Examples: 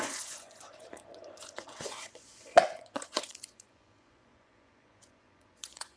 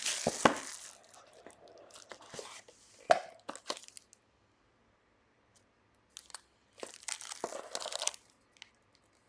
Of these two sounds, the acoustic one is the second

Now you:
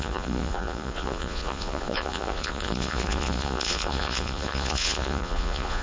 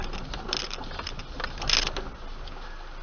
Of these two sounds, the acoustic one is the second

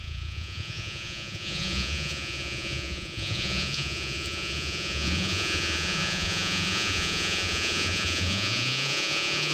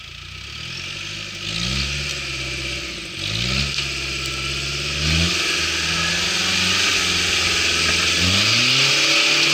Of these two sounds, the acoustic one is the second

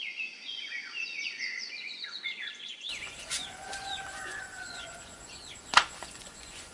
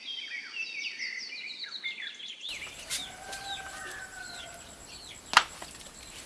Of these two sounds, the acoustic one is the second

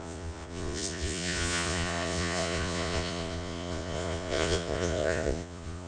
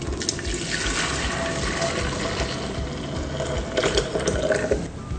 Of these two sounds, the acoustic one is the second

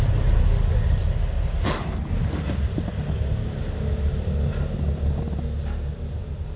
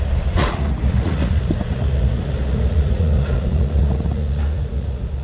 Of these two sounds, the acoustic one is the first